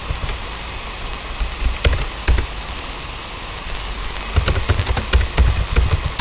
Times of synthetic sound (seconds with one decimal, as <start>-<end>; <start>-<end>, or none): none